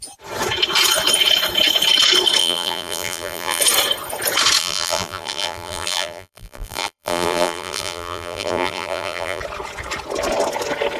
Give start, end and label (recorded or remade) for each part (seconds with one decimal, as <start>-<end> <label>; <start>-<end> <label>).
0.0-2.4 recorded; 2.4-3.6 remade; 3.6-4.6 recorded; 4.6-9.4 remade; 9.4-11.0 recorded